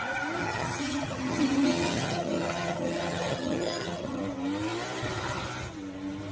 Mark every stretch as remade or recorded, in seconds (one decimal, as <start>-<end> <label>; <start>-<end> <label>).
0.0-0.4 recorded; 0.4-4.2 remade; 4.2-6.3 recorded